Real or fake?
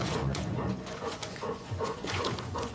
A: fake